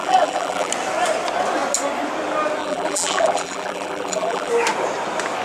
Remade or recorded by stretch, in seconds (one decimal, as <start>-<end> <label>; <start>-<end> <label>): 0.0-0.7 remade; 0.7-2.6 recorded; 2.6-4.5 remade; 4.5-5.4 recorded